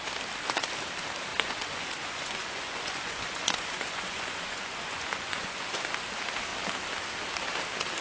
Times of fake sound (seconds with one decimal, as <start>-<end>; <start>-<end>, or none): 1.3-5.9